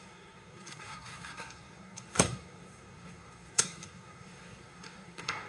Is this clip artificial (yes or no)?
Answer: yes